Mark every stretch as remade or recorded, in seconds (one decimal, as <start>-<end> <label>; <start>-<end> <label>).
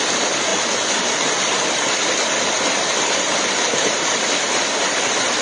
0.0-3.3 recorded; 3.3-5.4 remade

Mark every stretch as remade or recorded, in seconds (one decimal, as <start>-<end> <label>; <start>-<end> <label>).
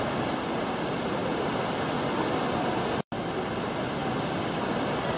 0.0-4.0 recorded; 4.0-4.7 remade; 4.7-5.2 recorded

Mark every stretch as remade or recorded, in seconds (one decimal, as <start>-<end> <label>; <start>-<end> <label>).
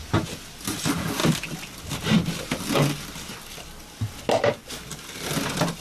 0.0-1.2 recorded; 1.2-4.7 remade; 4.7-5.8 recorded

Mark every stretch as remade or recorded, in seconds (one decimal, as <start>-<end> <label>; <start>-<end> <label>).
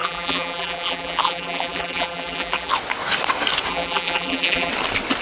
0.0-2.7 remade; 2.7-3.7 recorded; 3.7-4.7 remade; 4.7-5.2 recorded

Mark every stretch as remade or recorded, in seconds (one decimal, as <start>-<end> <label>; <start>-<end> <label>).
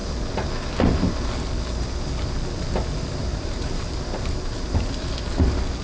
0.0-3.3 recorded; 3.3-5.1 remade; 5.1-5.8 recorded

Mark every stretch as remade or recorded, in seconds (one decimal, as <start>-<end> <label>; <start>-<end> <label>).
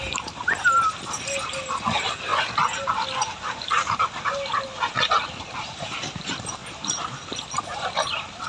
0.0-6.6 recorded; 6.6-7.3 remade; 7.3-8.5 recorded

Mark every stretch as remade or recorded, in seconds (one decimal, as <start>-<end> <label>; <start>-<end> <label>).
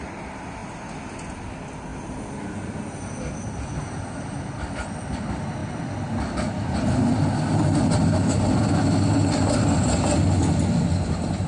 0.0-5.6 recorded; 5.6-8.5 remade; 8.5-11.5 recorded